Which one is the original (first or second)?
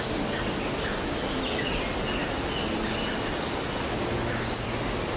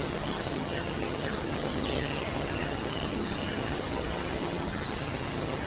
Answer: first